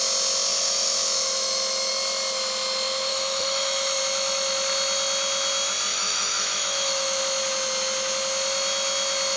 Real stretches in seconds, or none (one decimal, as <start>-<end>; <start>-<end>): 0.0-0.5; 1.9-3.1; 4.0-5.9; 7.2-9.4